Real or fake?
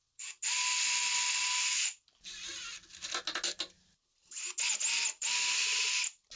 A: real